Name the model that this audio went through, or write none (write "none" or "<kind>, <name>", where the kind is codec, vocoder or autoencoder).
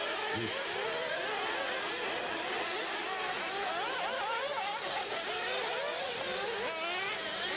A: none